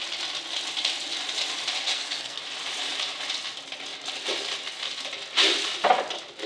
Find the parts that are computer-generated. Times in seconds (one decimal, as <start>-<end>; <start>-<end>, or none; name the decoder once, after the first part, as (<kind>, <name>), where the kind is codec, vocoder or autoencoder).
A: 1.9-2.4 (codec, SNAC)